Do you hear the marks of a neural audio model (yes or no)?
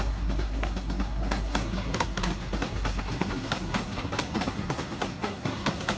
yes